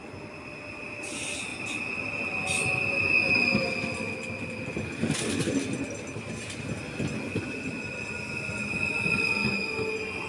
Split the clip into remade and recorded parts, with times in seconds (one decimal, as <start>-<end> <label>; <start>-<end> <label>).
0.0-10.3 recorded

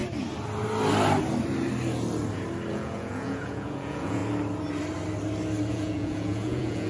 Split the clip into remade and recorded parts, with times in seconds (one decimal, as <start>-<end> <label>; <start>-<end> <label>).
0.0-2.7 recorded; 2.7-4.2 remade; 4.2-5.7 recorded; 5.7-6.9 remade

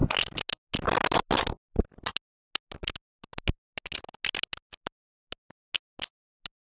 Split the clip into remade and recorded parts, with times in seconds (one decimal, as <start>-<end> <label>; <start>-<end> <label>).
0.0-6.7 recorded